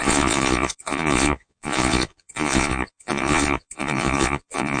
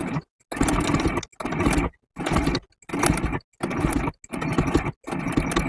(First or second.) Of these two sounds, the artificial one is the first